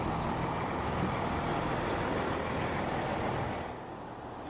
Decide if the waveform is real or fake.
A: real